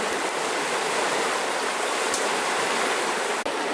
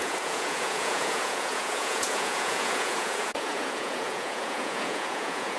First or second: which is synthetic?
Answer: second